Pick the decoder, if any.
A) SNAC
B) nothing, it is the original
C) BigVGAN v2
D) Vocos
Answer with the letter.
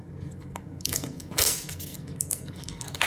A